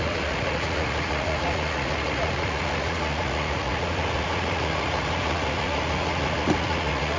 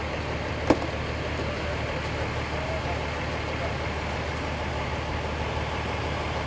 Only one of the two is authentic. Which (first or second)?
second